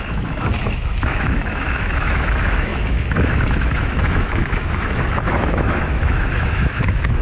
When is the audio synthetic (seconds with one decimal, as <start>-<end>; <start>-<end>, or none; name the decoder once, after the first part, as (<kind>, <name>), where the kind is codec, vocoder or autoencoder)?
0.0-7.2 (autoencoder, DAC-VAE)